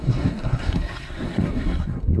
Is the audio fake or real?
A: fake